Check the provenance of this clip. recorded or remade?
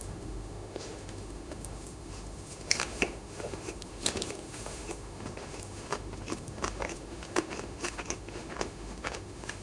remade